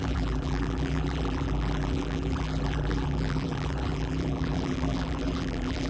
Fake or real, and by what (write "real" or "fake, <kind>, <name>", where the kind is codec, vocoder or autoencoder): fake, vocoder, BigVGAN v2